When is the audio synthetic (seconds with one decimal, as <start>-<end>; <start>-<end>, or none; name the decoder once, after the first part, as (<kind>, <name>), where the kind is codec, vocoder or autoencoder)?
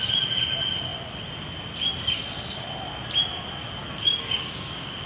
3.8-5.1 (codec, DAC)